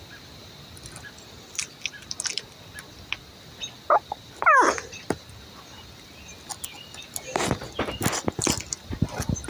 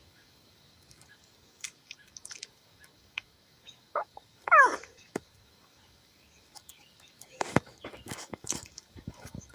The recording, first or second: first